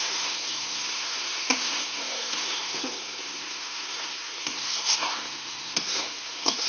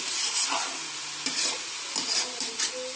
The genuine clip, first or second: second